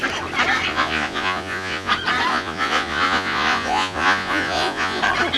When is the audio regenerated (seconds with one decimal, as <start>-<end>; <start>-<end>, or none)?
0.7-1.9; 2.3-5.0